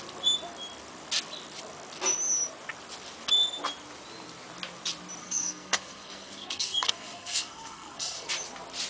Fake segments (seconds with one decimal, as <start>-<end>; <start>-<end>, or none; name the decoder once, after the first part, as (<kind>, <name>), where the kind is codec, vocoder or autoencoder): 5.2-8.3 (codec, SNAC)